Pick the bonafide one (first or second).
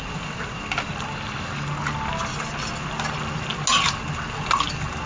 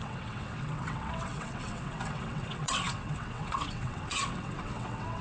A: first